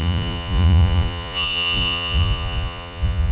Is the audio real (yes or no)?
no